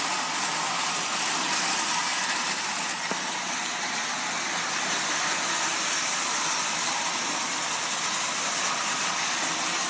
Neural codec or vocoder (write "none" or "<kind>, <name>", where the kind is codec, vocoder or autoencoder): none